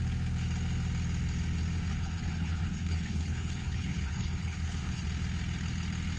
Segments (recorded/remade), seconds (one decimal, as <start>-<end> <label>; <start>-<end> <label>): 0.0-1.9 recorded; 1.9-5.0 remade; 5.0-6.2 recorded